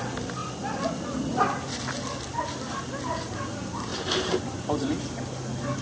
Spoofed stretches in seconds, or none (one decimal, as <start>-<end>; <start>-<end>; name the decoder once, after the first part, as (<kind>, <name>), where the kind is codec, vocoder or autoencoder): 3.9-5.0 (vocoder, BigVGAN v2)

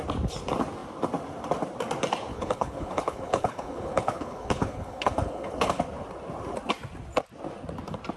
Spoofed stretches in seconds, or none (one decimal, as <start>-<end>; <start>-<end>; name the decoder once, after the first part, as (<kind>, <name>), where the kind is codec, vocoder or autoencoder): 2.3-5.8 (codec, HILCodec)

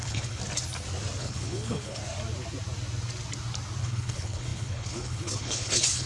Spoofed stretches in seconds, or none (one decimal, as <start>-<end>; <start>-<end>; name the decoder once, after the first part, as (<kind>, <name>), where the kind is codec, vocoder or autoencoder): 0.0-0.4 (codec, HILCodec); 1.2-2.0; 3.8-6.1

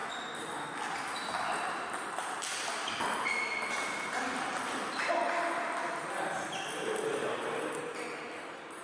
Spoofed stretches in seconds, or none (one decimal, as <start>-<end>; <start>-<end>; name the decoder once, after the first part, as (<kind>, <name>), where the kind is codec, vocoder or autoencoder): none